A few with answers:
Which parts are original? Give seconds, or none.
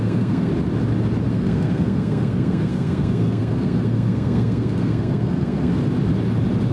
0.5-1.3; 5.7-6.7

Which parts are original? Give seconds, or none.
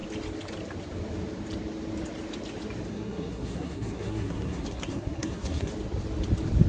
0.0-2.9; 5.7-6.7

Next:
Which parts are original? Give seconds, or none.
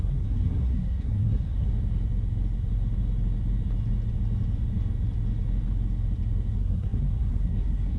1.7-6.5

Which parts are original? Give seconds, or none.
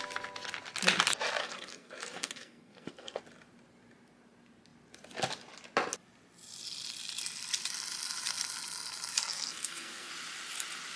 0.0-1.4; 3.2-9.3; 10.1-11.0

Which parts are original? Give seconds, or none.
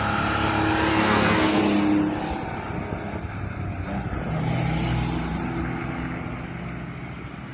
0.0-0.9; 1.6-7.5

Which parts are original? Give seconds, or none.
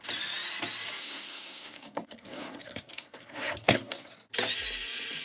0.0-1.0; 4.1-5.2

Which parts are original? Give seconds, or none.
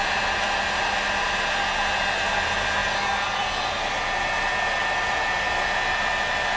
0.0-6.6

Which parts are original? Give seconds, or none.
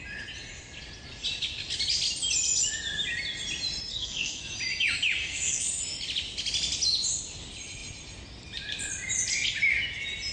0.0-3.9; 4.5-5.2; 5.8-10.3